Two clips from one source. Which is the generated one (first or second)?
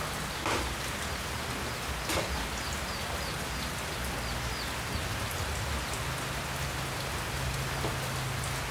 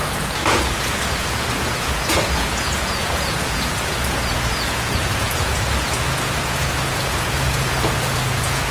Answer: second